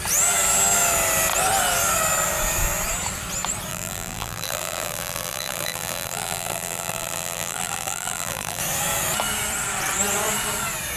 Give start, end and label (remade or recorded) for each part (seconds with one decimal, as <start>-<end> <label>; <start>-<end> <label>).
0.0-3.7 recorded; 3.7-8.6 remade; 8.6-11.0 recorded